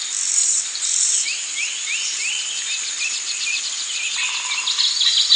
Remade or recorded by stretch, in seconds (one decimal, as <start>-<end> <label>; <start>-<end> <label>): 0.0-0.4 recorded; 0.4-3.6 remade; 3.6-5.4 recorded